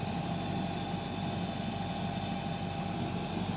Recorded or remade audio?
recorded